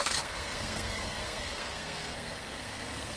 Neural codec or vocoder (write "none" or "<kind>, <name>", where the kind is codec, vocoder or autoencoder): codec, SNAC